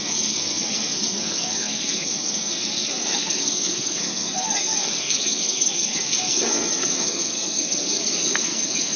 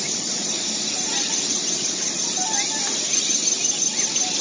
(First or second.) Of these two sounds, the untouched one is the second